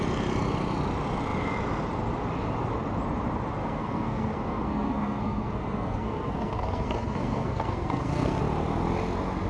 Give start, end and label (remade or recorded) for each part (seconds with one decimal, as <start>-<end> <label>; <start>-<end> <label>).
0.0-3.6 recorded; 3.6-8.4 remade; 8.4-9.5 recorded